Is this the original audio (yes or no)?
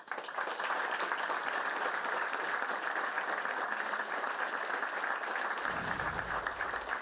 yes